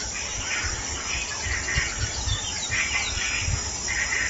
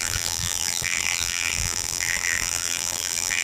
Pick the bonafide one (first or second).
first